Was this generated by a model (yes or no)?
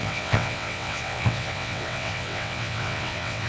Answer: yes